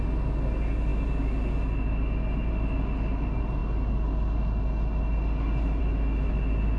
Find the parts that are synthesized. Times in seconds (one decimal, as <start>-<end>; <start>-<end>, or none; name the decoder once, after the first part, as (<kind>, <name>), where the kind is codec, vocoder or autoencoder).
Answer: none